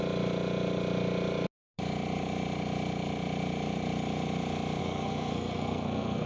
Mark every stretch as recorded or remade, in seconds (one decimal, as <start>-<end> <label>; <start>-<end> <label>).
0.0-4.8 recorded; 4.8-6.3 remade